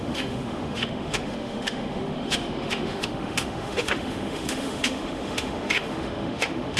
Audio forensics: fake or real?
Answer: fake